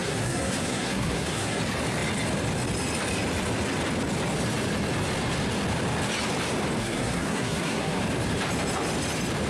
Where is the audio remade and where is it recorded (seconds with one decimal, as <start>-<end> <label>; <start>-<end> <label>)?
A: 0.0-1.6 remade; 1.6-6.8 recorded; 6.8-8.0 remade; 8.0-9.5 recorded